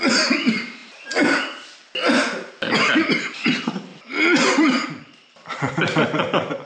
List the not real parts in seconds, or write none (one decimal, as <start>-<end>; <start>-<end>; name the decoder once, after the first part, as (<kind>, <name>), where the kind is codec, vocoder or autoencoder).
0.8-2.5 (vocoder, BigVGAN v2); 3.9-6.7